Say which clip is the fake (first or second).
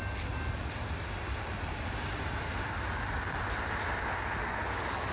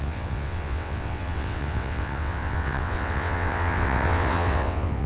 second